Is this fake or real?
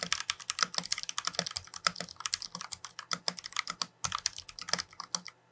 real